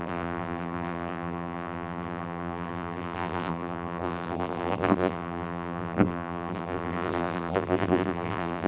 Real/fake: fake